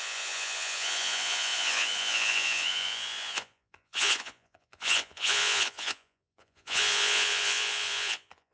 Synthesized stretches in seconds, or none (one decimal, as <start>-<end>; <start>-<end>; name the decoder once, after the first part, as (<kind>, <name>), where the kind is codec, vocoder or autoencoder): 0.0-8.5 (vocoder, Vocos)